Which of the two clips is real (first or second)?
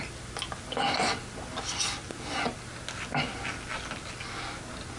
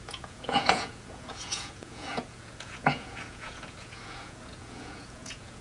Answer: first